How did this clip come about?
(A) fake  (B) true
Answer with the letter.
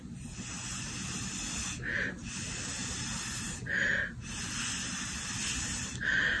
B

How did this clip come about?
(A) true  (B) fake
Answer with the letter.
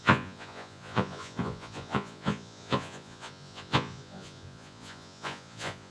B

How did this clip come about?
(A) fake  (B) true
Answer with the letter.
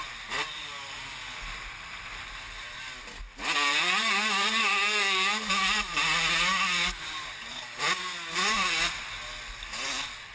B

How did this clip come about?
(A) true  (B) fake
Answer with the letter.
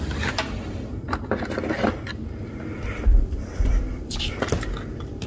A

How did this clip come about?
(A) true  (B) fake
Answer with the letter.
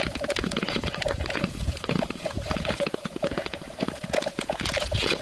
B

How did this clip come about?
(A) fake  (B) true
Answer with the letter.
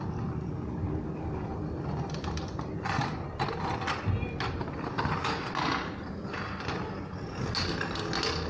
B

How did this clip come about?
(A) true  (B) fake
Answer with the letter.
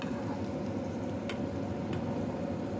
A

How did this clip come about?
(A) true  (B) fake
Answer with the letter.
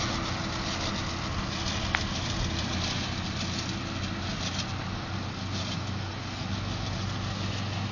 A